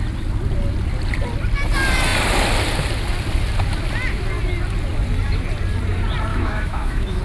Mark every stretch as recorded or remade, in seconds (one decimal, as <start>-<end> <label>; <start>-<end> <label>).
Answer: 0.0-6.3 recorded; 6.3-7.2 remade